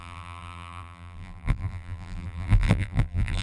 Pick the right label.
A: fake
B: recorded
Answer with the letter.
A